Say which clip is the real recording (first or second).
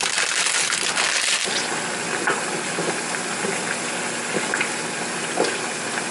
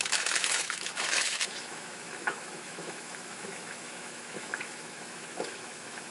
first